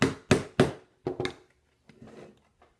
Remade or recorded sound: recorded